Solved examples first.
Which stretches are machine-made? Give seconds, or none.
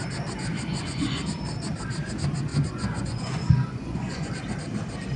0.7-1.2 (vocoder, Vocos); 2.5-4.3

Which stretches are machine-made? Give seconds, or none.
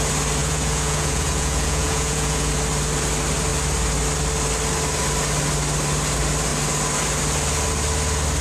0.4-2.5 (vocoder, Vocos)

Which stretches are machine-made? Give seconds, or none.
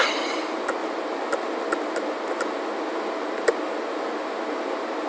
none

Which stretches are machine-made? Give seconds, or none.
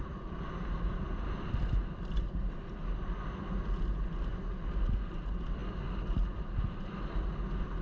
none